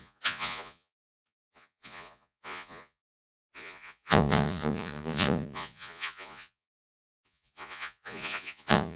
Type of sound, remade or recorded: remade